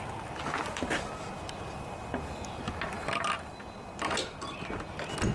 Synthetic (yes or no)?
no